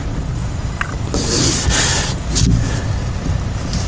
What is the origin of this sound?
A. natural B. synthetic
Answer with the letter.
A